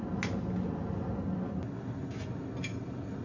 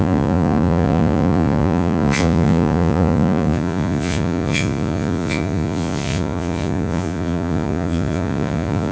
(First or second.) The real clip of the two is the first